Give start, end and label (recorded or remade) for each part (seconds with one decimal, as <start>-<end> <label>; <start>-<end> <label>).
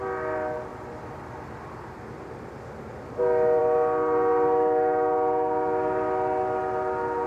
0.0-7.3 recorded